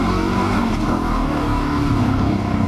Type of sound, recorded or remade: remade